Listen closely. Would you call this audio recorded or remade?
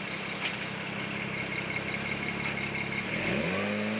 recorded